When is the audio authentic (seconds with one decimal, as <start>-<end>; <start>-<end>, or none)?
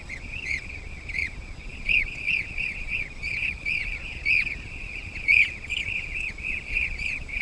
none